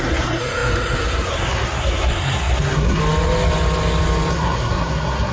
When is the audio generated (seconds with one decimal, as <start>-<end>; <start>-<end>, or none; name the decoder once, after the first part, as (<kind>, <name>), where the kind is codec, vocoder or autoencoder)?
0.0-3.0 (codec, SNAC); 4.3-5.3